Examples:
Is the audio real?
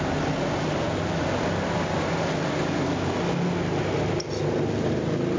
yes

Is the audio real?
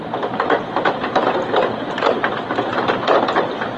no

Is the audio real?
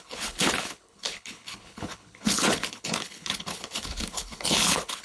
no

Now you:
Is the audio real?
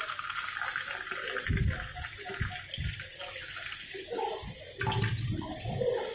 yes